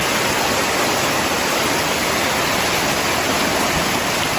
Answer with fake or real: real